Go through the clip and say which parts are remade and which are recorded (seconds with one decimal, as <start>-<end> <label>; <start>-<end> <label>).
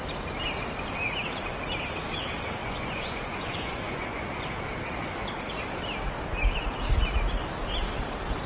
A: 0.0-2.6 recorded; 2.6-4.2 remade; 4.2-8.5 recorded